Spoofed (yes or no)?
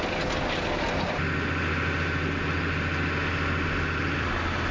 no